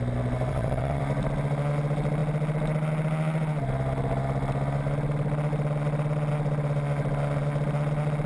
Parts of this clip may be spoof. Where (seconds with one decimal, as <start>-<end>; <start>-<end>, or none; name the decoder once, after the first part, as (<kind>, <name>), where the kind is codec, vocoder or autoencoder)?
0.5-1.0 (vocoder, WaveNeXt)